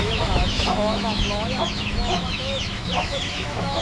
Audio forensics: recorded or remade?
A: remade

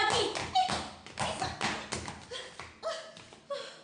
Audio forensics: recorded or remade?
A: recorded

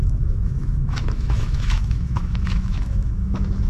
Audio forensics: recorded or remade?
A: remade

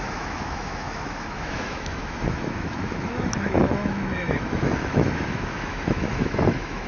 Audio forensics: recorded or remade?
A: remade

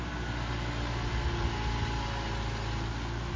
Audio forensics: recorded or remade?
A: recorded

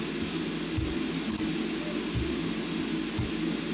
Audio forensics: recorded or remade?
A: recorded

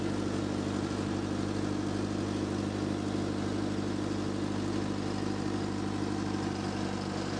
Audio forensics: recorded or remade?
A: recorded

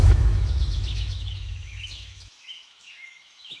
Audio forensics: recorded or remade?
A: remade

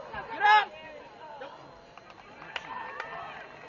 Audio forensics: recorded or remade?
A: recorded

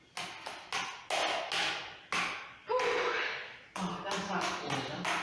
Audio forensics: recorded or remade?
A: recorded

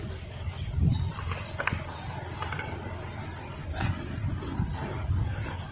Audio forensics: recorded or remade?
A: recorded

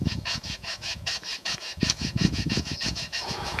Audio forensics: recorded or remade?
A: remade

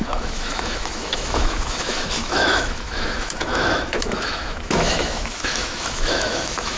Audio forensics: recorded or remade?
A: remade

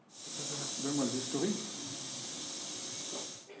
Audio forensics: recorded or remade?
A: recorded